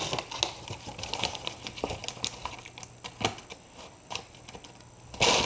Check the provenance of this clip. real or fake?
real